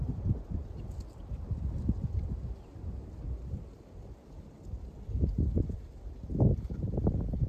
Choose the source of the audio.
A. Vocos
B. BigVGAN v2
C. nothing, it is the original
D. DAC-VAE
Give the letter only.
C